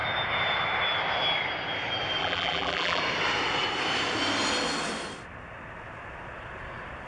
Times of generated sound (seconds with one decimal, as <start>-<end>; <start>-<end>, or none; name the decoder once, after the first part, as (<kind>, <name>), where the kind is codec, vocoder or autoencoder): 2.2-3.0 (vocoder, BigVGAN v2)